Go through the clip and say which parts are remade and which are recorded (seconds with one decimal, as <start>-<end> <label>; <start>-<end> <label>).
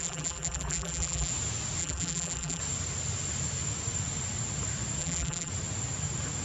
0.0-1.3 remade; 1.3-1.8 recorded; 1.8-2.6 remade; 2.6-5.0 recorded; 5.0-5.5 remade; 5.5-6.4 recorded